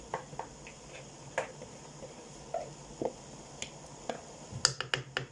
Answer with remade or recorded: recorded